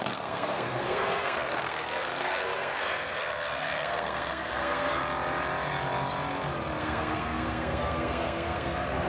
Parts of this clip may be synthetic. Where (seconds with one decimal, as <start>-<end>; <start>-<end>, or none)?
0.0-5.0; 6.8-9.1